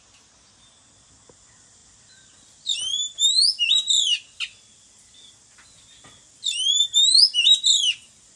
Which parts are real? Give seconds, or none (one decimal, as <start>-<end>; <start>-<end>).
0.0-8.4